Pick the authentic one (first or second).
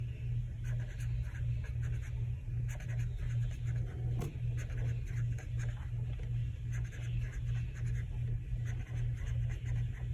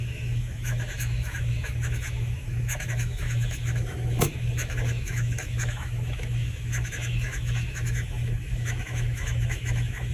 first